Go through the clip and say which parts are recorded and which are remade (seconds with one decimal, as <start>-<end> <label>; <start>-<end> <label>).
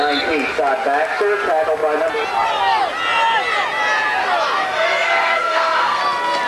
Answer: 0.0-4.6 recorded; 4.6-6.0 remade; 6.0-6.5 recorded